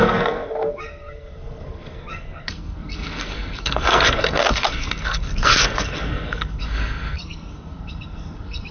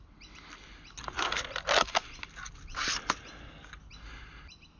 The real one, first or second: second